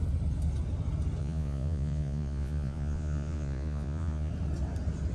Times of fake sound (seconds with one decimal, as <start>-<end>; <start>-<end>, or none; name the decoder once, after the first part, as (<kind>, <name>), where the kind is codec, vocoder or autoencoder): 1.2-4.3 (vocoder, Vocos)